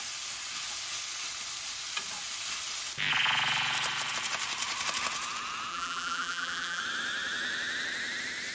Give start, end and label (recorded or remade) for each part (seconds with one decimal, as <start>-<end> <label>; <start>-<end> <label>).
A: 0.0-5.7 recorded; 5.7-6.8 remade; 6.8-8.5 recorded